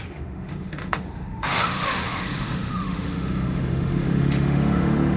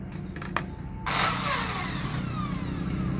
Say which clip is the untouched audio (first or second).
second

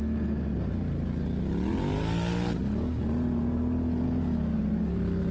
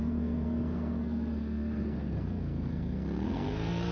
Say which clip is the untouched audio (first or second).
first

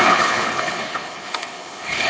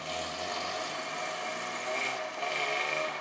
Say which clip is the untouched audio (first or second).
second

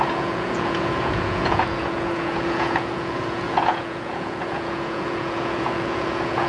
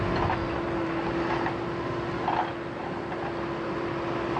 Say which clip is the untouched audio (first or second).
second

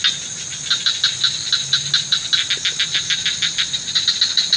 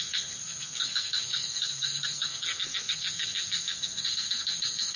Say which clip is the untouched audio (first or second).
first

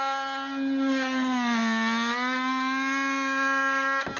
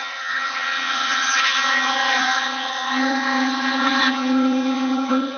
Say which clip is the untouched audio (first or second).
first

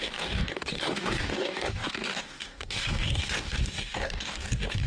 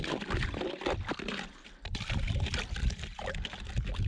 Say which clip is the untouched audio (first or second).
second